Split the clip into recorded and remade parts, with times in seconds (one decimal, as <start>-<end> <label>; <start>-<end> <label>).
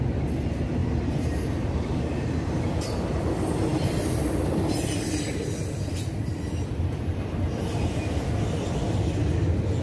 0.0-0.8 recorded; 0.8-2.0 remade; 2.0-9.8 recorded